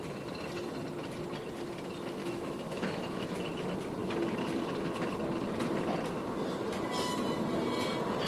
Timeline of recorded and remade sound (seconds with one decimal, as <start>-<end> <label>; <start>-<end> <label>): 0.0-2.2 recorded; 2.2-3.3 remade; 3.3-8.3 recorded